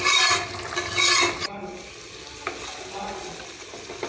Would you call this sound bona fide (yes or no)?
yes